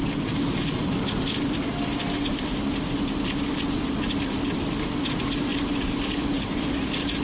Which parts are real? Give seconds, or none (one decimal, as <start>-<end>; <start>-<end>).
0.0-7.2